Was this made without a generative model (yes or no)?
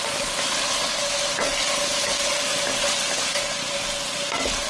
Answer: yes